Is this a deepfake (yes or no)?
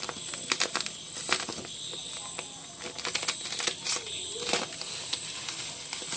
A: no